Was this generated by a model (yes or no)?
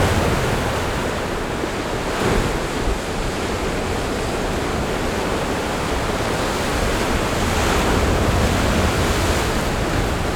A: no